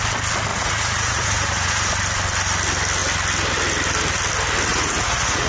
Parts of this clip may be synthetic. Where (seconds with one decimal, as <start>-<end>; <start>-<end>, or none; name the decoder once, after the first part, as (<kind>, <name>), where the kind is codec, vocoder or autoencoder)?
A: 0.5-1.9 (vocoder, Vocos); 4.7-5.5